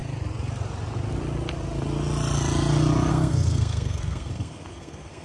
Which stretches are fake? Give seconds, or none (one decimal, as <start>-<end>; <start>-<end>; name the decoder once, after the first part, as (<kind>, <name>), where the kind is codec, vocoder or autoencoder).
3.1-5.2 (codec, SNAC)